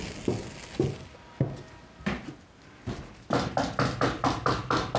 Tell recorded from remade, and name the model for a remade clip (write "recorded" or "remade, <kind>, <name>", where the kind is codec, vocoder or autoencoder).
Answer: recorded